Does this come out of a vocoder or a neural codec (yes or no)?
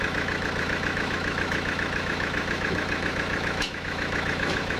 yes